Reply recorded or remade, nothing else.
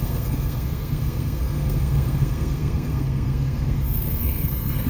remade